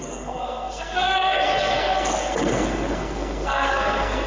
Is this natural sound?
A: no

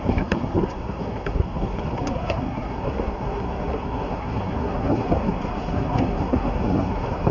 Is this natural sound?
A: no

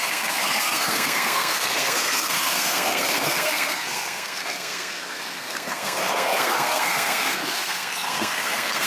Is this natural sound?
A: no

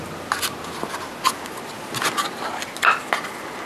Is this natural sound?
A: yes